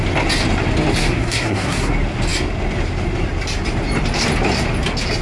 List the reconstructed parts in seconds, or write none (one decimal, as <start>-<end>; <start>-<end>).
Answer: 1.0-1.9